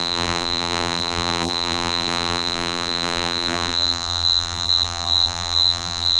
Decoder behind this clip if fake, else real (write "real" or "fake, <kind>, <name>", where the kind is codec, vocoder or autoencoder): fake, vocoder, BigVGAN v2